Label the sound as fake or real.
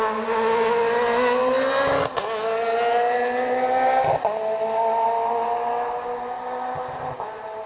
real